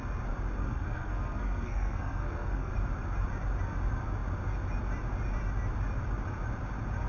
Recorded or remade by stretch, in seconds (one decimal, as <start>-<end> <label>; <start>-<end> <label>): 0.0-0.6 recorded; 0.6-2.7 remade; 2.7-7.1 recorded